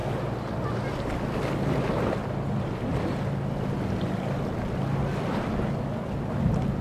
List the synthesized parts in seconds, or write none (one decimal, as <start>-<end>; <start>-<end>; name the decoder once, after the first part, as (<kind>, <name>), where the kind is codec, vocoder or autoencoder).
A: none